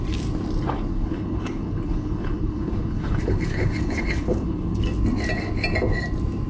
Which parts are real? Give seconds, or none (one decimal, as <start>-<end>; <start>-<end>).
0.0-0.9; 4.8-6.5